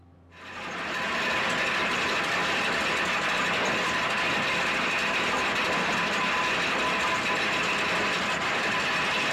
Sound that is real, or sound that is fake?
real